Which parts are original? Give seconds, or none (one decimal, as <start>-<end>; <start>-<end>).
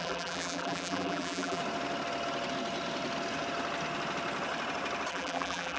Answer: 1.6-5.1